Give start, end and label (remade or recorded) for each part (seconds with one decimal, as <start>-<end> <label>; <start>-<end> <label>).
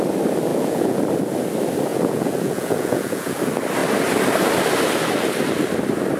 0.0-0.5 recorded; 0.5-1.0 remade; 1.0-1.9 recorded; 1.9-3.4 remade; 3.4-6.2 recorded